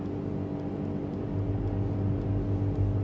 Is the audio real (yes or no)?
yes